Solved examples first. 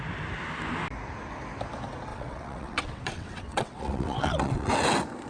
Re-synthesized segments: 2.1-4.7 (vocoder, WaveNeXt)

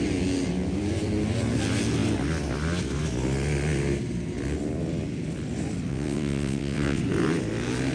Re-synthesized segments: 5.9-7.0 (vocoder, WaveNeXt)

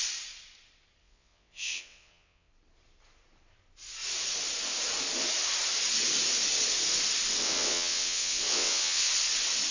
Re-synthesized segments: 1.0-2.5 (vocoder, WaveNeXt); 7.4-9.1

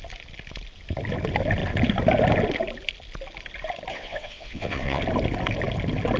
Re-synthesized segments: 3.9-5.0 (vocoder, WaveNeXt)

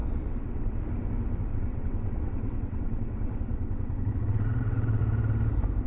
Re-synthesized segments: 0.0-0.8 (vocoder, WaveNeXt); 1.5-5.0

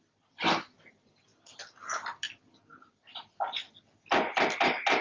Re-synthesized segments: none

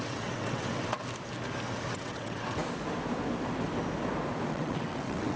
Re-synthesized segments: 0.0-1.0 (vocoder, WaveNeXt); 1.9-2.6; 4.5-5.4

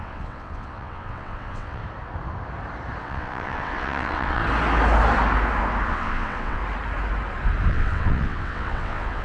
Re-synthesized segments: 0.0-1.8 (vocoder, WaveNeXt); 3.0-4.4; 5.9-6.6; 7.7-9.2